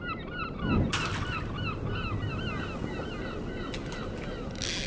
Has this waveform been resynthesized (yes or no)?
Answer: no